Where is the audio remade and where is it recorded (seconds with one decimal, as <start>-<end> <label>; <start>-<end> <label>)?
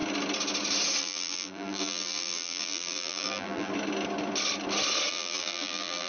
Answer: 0.0-1.0 recorded; 1.0-3.7 remade; 3.7-5.1 recorded; 5.1-6.1 remade